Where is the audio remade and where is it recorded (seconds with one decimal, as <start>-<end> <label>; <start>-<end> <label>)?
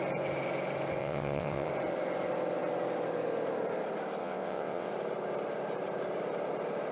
0.0-1.0 recorded; 1.0-1.7 remade; 1.7-4.2 recorded; 4.2-4.9 remade; 4.9-6.9 recorded